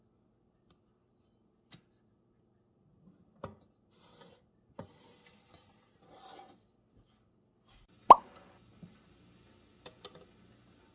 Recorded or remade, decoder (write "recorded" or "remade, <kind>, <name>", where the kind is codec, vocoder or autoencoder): recorded